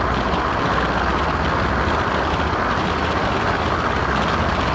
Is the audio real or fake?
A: real